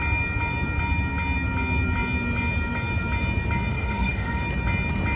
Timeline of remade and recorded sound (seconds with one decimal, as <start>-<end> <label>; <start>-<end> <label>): 0.0-3.7 recorded; 3.7-4.4 remade; 4.4-5.2 recorded